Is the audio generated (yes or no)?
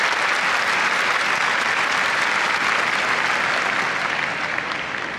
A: no